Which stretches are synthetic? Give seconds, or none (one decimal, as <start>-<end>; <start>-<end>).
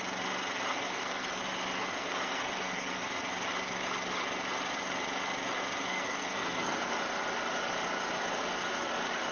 0.7-1.4; 1.8-3.0; 5.9-6.9